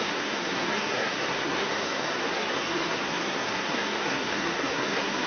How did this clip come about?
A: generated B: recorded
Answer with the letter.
A